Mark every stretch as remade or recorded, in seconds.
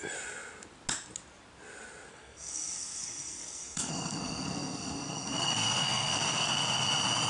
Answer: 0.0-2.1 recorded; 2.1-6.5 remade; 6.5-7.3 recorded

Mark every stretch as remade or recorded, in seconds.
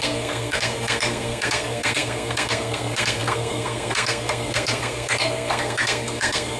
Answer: 0.0-6.6 remade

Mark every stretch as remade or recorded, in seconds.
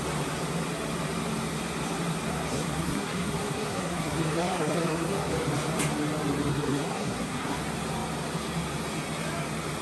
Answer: 0.0-2.5 recorded; 2.5-5.3 remade; 5.3-6.5 recorded; 6.5-7.6 remade; 7.6-9.8 recorded